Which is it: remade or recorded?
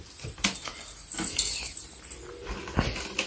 recorded